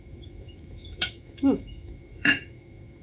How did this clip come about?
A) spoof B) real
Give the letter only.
A